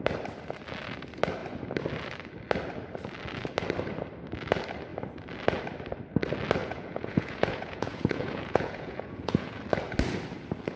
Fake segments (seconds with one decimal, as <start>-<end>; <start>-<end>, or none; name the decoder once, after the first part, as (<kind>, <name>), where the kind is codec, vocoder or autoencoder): 6.6-9.6 (vocoder, Vocos)